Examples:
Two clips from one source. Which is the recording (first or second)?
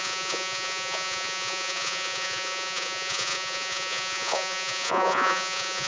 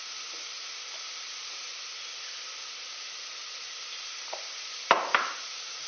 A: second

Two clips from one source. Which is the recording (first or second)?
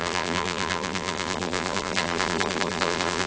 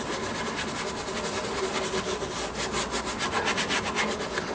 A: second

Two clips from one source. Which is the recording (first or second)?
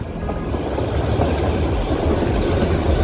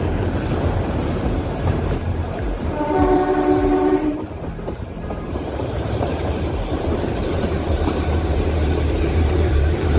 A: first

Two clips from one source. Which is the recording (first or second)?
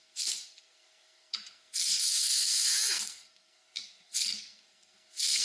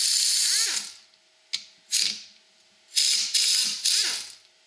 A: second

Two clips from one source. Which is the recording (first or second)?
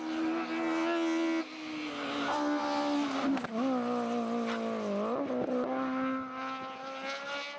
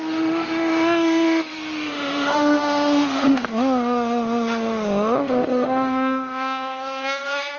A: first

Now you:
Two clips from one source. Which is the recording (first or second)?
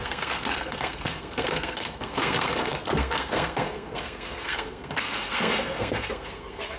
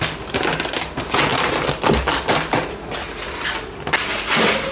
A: second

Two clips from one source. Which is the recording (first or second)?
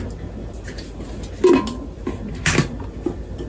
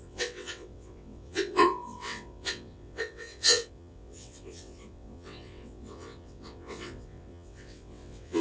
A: first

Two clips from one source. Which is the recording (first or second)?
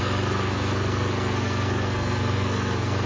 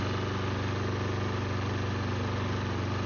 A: second